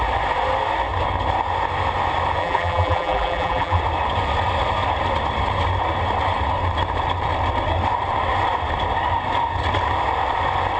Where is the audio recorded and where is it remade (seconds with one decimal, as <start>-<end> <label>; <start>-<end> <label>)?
0.0-2.4 recorded; 2.4-3.8 remade; 3.8-10.8 recorded